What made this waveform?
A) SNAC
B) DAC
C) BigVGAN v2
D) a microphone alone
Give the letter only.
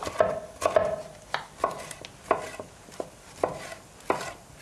D